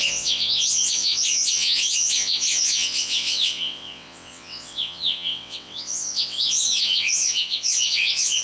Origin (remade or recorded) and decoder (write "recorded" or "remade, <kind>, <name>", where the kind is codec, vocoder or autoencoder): remade, vocoder, WaveNeXt